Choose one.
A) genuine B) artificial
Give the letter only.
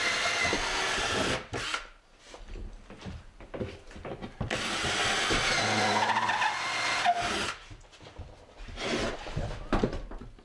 A